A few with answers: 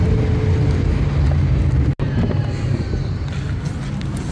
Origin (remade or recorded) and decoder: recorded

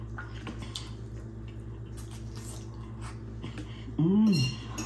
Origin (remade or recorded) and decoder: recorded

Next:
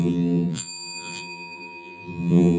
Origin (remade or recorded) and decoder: remade, vocoder, BigVGAN v2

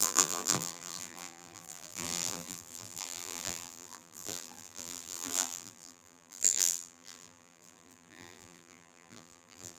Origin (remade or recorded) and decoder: remade, vocoder, BigVGAN v2